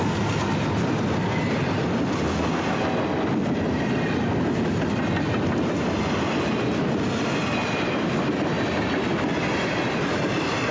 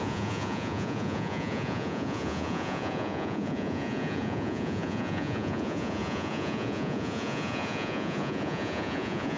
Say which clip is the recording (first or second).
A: first